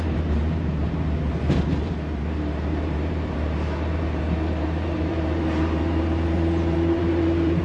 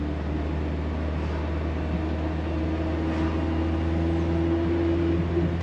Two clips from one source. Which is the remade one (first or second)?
first